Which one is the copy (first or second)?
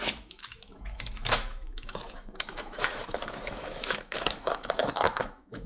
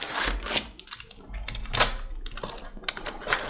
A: first